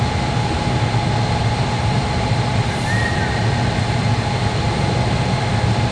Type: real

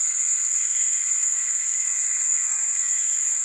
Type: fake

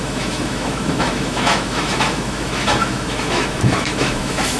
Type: fake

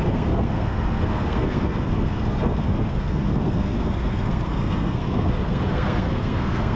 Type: fake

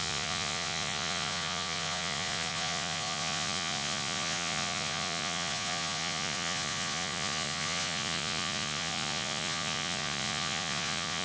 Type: fake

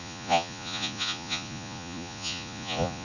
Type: fake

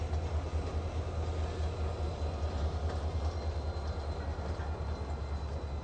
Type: real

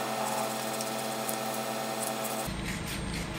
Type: real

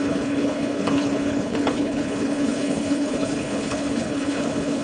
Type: fake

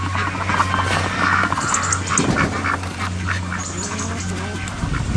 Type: real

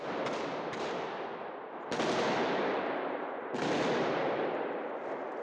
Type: fake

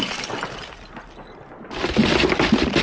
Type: real